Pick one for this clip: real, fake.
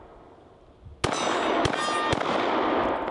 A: real